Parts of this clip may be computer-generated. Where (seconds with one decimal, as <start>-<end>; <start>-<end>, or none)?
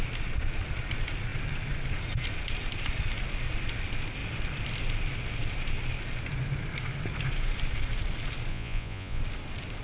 8.5-9.2